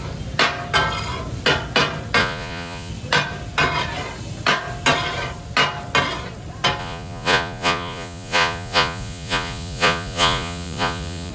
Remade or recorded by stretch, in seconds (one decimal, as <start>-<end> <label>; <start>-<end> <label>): 0.0-2.2 recorded; 2.2-2.9 remade; 2.9-6.8 recorded; 6.8-11.3 remade